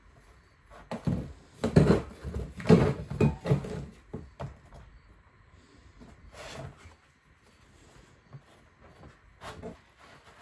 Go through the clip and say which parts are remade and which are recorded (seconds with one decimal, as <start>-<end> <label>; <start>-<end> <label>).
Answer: 0.0-10.4 recorded